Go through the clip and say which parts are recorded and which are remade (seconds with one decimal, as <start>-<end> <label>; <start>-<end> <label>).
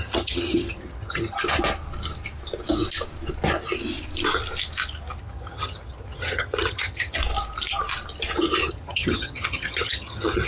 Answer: 0.0-1.2 remade; 1.2-5.2 recorded; 5.2-7.2 remade; 7.2-8.7 recorded; 8.7-10.5 remade